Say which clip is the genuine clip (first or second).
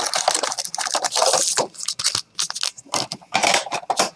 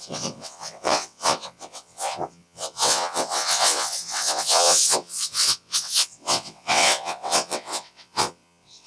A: first